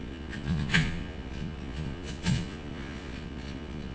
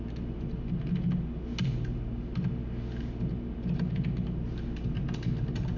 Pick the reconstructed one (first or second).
first